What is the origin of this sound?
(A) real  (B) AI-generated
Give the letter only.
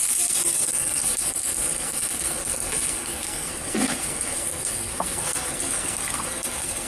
B